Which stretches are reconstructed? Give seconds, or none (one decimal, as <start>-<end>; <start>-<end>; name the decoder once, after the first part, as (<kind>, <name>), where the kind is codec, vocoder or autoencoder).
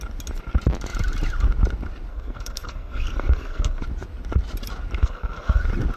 2.1-3.8 (codec, SNAC); 5.0-5.6